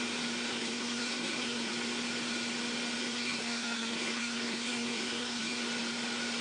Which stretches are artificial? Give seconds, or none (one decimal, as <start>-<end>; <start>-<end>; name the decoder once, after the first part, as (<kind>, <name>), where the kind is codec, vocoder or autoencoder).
0.5-1.7 (codec, SNAC); 3.0-5.6